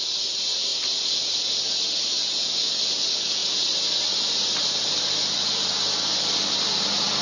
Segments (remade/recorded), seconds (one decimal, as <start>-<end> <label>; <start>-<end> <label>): 0.0-7.2 recorded